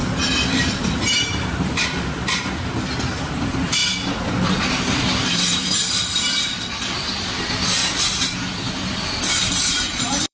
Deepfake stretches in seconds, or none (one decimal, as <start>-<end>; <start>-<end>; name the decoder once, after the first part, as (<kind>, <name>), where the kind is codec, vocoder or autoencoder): 0.0-3.8 (vocoder, BigVGAN v2); 4.7-10.3